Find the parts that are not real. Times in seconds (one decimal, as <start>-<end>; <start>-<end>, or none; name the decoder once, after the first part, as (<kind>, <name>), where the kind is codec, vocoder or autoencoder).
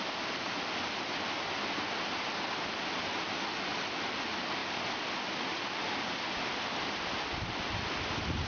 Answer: none